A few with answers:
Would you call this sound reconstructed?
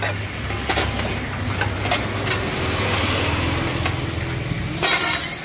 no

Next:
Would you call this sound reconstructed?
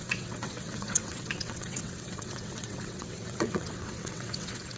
yes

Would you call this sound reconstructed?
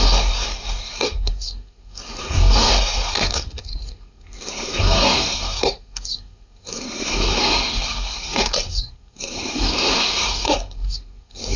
yes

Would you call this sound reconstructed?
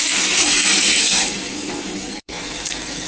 yes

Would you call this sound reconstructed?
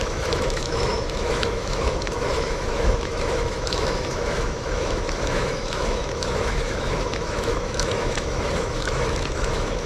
yes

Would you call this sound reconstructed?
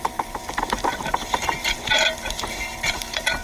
yes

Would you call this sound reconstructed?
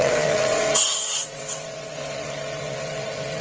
yes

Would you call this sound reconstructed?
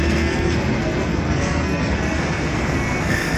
yes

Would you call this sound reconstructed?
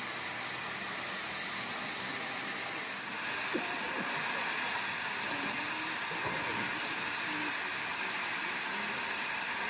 no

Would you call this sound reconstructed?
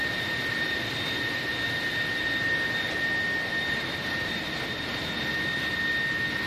no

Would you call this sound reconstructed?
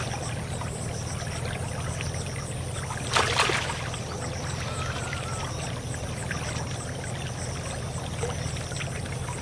no